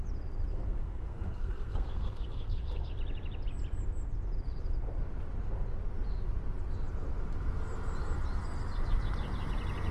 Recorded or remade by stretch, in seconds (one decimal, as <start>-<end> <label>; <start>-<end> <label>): 0.0-0.5 recorded; 0.5-2.9 remade; 2.9-9.9 recorded